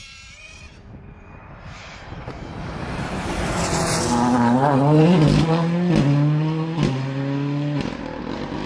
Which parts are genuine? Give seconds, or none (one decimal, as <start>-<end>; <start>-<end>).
4.0-8.7